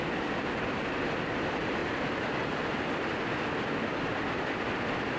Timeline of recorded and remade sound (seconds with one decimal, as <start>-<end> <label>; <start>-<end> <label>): 0.0-1.8 remade; 1.8-4.2 recorded; 4.2-5.2 remade